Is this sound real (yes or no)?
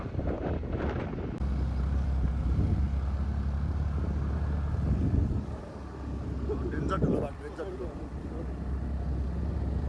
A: yes